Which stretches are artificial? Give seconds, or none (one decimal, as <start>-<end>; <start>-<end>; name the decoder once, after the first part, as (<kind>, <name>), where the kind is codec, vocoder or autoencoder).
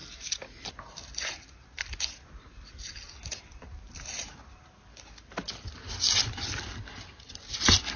none